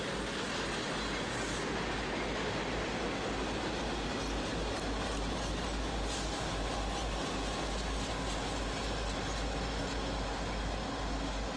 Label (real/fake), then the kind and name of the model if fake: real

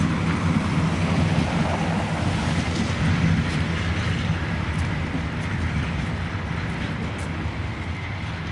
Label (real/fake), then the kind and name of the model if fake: real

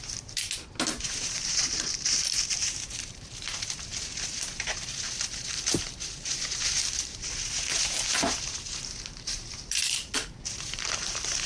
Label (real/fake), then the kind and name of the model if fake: fake, vocoder, BigVGAN v2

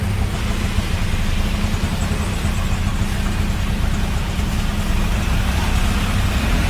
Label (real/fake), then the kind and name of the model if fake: real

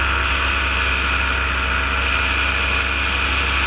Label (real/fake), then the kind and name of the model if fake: real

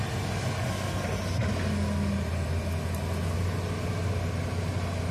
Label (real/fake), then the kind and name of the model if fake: real